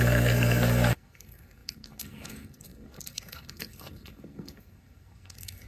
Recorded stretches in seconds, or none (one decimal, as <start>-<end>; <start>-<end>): none